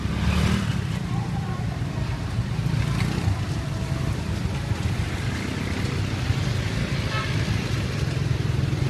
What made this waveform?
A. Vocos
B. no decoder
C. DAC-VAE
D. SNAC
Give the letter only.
B